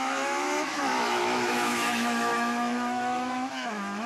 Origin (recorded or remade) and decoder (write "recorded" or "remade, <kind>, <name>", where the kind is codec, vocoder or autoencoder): remade, autoencoder, DAC-VAE